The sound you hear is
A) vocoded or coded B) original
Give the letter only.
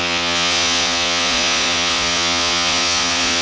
A